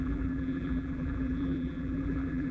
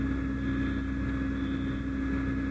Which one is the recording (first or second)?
second